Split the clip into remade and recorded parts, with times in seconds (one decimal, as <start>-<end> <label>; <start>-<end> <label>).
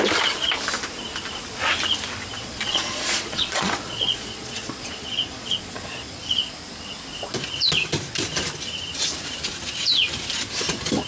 0.0-2.3 recorded; 2.3-6.2 remade; 6.2-11.1 recorded